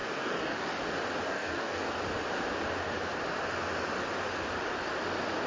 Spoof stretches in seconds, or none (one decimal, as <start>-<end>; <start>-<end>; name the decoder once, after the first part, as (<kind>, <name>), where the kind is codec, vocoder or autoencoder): 0.0-0.8 (codec, DAC); 1.3-1.9

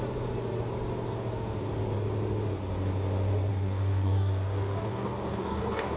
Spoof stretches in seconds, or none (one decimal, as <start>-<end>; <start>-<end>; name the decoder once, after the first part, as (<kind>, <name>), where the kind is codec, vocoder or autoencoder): 3.5-6.0 (codec, DAC)

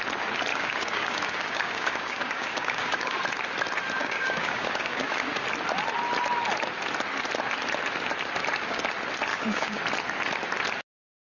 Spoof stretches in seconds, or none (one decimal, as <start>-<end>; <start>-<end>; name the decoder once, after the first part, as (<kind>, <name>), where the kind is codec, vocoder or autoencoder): 0.5-3.2 (codec, DAC); 4.0-5.4; 9.3-9.8

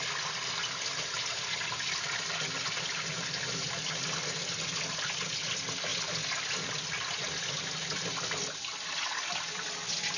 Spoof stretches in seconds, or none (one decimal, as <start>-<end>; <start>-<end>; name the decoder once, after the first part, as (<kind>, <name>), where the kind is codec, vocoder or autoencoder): none

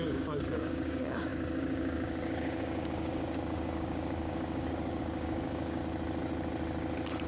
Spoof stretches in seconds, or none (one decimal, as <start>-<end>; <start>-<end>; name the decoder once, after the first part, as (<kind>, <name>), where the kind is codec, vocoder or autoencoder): 0.0-5.8 (codec, DAC)

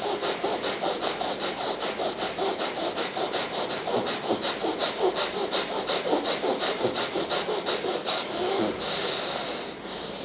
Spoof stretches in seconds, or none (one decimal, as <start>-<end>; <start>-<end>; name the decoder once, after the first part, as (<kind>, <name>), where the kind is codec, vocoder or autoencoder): 8.0-8.6 (codec, DAC)